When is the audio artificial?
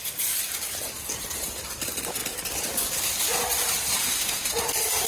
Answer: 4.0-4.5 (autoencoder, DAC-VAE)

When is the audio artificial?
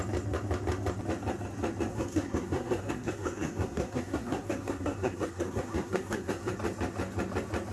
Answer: 1.9-6.5 (codec, SNAC)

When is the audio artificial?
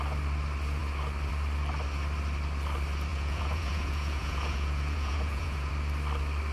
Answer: 3.1-5.7 (vocoder, Vocos)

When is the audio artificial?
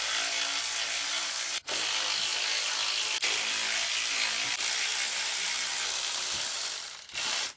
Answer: none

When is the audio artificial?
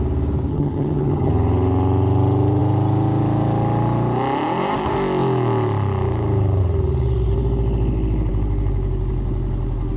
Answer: 0.5-1.3 (vocoder, HiFi-GAN)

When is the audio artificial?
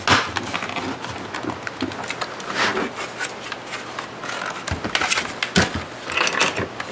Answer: none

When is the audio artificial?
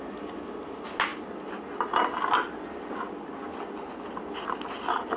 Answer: none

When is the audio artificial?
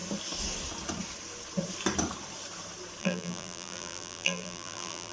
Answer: 3.0-5.1 (vocoder, BigVGAN v2)